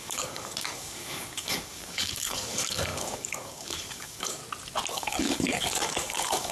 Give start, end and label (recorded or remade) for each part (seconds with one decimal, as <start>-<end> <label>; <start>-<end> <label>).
0.0-4.4 remade; 4.4-4.9 recorded; 4.9-6.5 remade